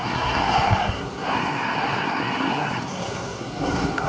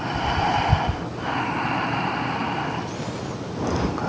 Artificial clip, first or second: first